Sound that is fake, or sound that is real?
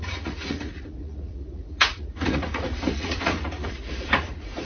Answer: fake